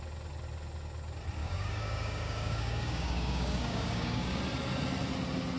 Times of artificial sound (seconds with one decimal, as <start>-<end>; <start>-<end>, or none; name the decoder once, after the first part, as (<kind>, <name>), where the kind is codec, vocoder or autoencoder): 1.4-4.4 (codec, DAC)